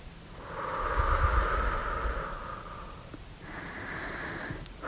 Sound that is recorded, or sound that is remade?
recorded